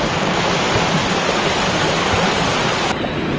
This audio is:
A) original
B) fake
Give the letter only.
A